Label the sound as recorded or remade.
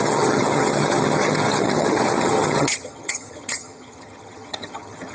remade